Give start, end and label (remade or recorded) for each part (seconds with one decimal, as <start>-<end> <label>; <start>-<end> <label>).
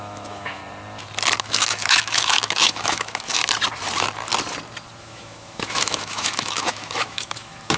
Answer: 0.0-0.6 remade; 0.6-1.4 recorded; 1.4-3.4 remade; 3.4-5.0 recorded; 5.0-7.8 remade